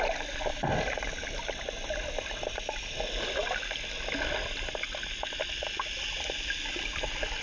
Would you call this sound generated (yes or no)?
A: no